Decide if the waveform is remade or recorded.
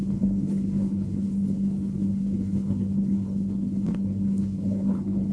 remade